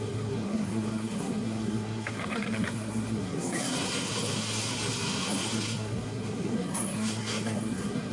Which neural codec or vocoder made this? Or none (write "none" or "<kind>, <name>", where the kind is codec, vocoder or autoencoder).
codec, SNAC